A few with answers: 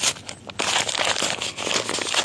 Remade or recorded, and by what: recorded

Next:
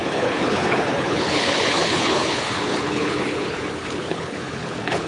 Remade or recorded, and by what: remade, codec, HILCodec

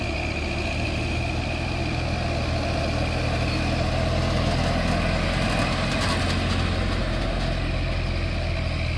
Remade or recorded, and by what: recorded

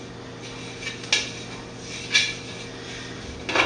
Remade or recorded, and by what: recorded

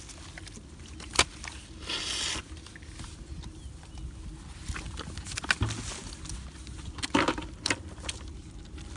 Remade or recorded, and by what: recorded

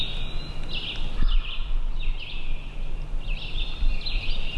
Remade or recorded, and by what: recorded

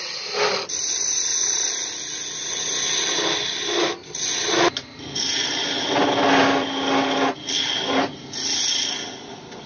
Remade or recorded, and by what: recorded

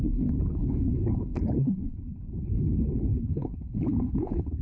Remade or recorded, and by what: remade, codec, HILCodec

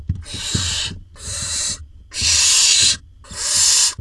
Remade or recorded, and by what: recorded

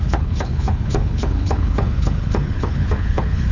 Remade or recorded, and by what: remade, codec, HILCodec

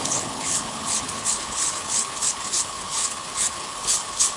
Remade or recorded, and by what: remade, codec, HILCodec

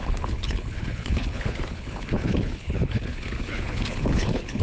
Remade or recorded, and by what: remade, codec, HILCodec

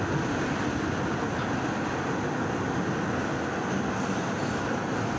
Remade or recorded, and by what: recorded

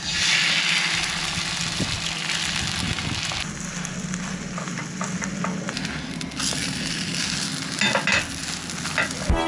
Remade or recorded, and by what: recorded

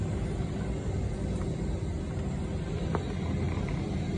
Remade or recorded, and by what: recorded